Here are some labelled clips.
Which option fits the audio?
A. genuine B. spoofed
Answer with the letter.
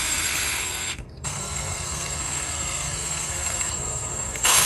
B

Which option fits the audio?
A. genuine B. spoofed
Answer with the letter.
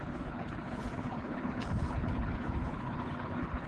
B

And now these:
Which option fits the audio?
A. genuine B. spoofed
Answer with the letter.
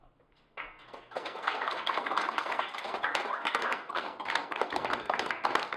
B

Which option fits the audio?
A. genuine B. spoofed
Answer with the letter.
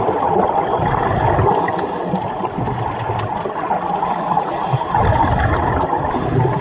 A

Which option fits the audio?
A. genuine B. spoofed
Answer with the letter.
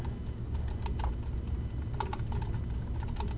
A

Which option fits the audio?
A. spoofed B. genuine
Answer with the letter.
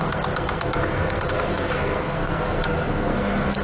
A